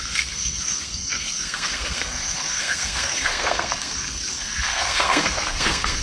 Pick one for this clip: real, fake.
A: fake